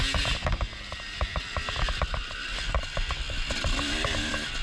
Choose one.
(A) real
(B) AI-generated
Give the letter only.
A